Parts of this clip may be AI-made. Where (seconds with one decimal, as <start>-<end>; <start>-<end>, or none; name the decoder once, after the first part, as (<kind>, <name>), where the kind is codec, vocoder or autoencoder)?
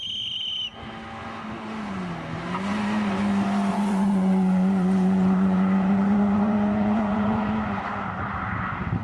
3.7-7.5 (vocoder, Vocos)